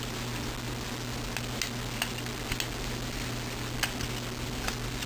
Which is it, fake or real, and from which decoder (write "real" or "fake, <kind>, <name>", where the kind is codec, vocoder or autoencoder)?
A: real